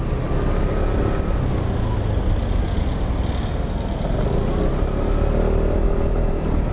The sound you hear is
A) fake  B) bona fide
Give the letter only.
B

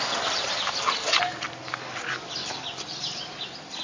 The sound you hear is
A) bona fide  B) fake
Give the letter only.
A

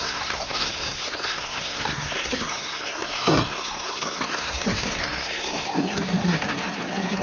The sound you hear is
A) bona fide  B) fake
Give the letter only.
B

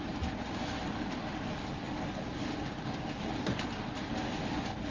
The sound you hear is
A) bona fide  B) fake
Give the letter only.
A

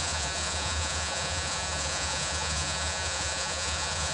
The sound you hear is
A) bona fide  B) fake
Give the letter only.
B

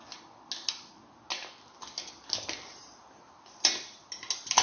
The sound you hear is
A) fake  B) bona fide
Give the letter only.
B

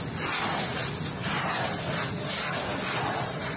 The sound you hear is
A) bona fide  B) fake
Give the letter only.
A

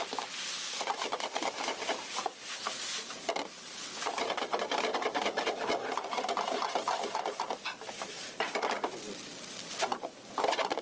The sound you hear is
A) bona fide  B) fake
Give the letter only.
A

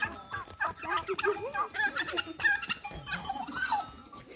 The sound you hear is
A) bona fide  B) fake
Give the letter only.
A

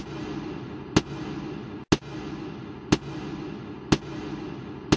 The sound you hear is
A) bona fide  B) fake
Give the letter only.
A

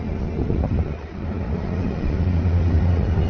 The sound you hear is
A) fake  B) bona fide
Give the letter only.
A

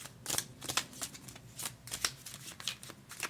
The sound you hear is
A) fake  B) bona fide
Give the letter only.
B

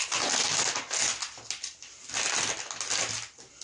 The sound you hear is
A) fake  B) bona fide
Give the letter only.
B